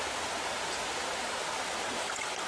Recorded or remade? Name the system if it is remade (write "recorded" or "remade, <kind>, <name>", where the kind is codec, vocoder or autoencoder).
recorded